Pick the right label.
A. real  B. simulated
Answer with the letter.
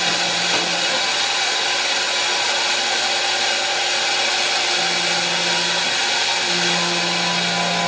A